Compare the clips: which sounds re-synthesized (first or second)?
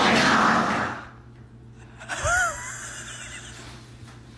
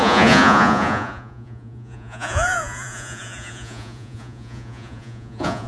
second